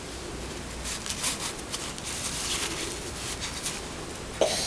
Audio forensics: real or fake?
real